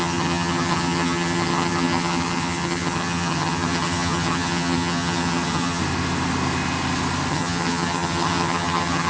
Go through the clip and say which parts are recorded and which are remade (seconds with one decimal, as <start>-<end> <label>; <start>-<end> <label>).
0.0-5.8 remade; 5.8-7.3 recorded; 7.3-9.1 remade